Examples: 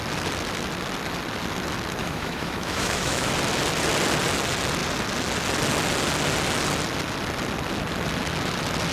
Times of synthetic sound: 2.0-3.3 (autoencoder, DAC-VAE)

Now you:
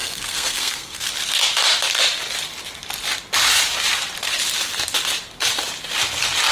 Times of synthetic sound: 0.0-1.1 (codec, SNAC)

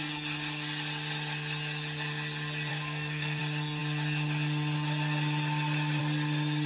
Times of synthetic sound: 2.7-3.4 (codec, SNAC)

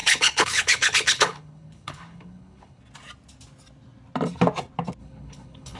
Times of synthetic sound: 0.0-2.8 (codec, HILCodec); 5.0-5.8

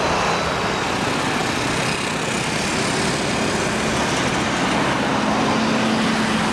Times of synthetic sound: none

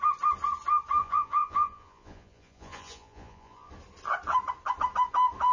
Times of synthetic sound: 1.0-3.7 (vocoder, Vocos)

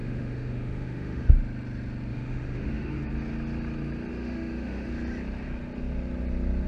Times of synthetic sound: 0.0-1.3 (autoencoder, DAC-VAE); 2.1-3.1; 4.1-4.9

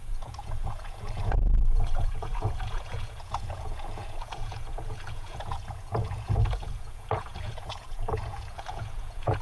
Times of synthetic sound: 0.0-9.4 (vocoder, Vocos)